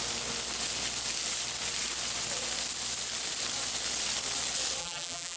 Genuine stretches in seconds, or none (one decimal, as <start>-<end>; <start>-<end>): 0.0-4.8